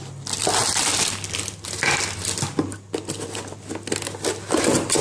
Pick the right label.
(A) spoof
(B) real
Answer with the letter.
A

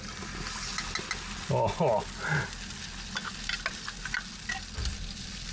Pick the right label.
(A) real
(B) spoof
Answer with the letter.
A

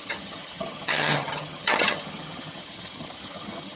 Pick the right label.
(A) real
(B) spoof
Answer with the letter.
B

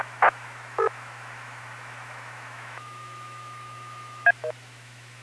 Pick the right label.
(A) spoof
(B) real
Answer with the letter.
A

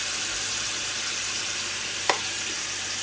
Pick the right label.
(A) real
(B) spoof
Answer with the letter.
B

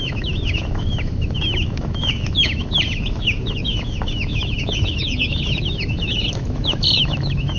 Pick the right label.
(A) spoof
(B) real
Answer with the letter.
A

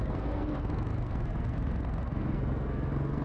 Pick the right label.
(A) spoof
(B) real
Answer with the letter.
A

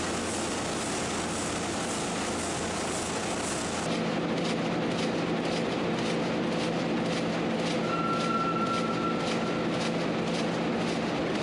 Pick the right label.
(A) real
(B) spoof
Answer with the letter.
A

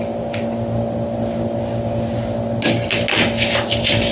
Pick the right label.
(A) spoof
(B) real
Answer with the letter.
B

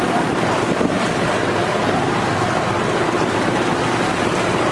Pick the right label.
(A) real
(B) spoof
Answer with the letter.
A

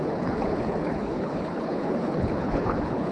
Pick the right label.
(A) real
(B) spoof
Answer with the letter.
B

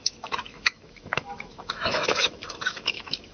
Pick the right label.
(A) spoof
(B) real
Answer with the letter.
A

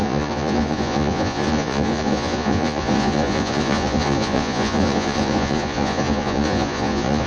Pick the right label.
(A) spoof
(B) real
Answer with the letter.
A